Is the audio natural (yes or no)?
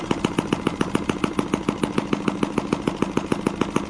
yes